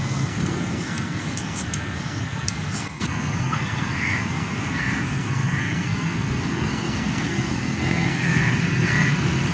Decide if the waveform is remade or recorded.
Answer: remade